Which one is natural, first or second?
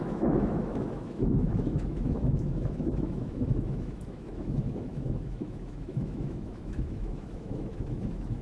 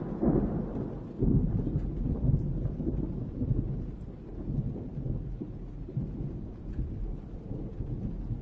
second